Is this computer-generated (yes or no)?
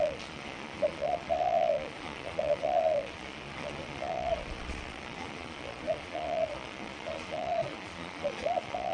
yes